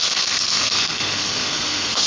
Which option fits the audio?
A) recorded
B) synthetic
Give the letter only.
B